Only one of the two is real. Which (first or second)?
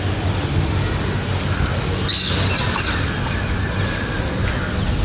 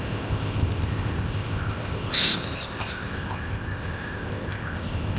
first